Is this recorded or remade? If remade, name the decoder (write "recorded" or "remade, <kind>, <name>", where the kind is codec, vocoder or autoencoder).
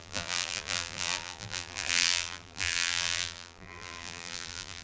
remade, vocoder, BigVGAN v2